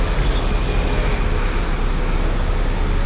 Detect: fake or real real